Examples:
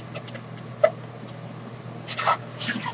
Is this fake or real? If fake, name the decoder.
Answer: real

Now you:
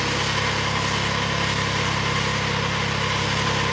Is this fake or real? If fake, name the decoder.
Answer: real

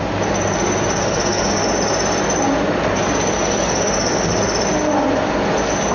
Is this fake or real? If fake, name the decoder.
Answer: real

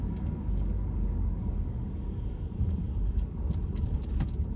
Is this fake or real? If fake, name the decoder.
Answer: fake, codec, DAC